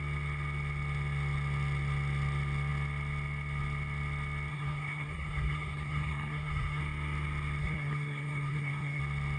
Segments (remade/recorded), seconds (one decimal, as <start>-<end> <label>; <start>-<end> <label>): 0.0-4.5 recorded; 4.5-6.8 remade; 6.8-7.6 recorded; 7.6-9.0 remade; 9.0-9.4 recorded